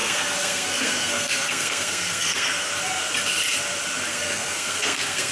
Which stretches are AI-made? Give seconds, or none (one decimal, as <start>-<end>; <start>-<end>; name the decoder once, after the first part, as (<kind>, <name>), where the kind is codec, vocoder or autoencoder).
0.0-2.7 (codec, SNAC); 4.1-5.3